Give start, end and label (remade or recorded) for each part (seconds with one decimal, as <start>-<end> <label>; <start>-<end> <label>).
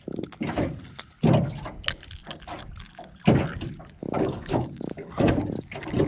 0.0-4.0 recorded; 4.0-5.3 remade; 5.3-6.1 recorded